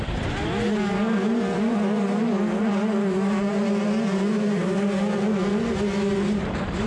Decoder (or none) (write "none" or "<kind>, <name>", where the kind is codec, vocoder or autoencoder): none